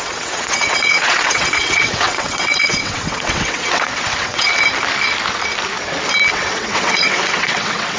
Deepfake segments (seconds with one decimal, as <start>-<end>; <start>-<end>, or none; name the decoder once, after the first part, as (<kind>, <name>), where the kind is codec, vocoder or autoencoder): 0.0-4.5 (vocoder, WaveNeXt); 6.3-8.0